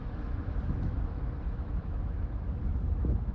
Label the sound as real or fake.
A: fake